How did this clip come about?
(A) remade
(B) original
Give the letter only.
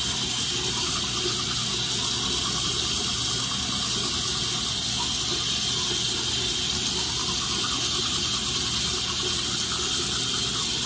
B